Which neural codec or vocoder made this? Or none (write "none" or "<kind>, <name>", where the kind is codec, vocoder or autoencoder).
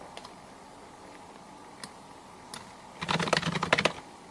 none